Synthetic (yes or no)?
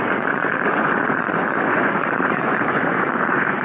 yes